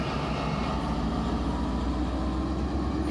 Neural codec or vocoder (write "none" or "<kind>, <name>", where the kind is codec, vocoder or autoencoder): none